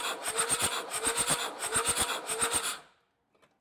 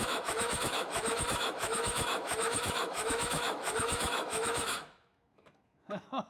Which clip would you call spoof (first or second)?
second